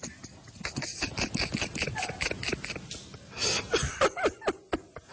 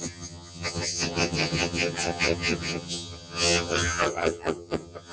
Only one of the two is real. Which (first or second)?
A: first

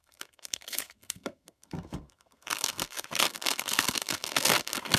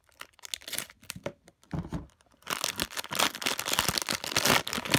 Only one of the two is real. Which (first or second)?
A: second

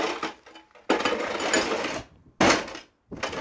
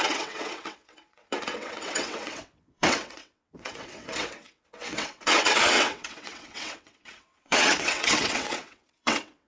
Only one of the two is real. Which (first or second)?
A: first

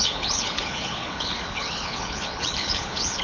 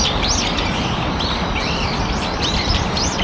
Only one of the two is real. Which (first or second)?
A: second